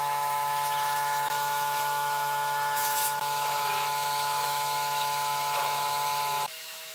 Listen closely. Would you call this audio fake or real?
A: fake